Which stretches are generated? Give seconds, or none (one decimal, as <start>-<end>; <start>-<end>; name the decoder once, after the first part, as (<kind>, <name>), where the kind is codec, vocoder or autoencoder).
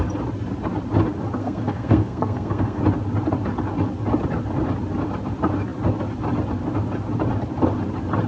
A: 1.4-2.8 (codec, SNAC)